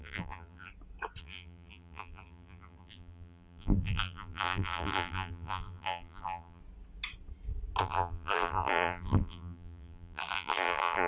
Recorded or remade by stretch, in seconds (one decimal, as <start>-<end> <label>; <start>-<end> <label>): 0.0-0.7 remade; 0.7-1.2 recorded; 1.2-6.6 remade; 6.6-7.8 recorded; 7.8-11.1 remade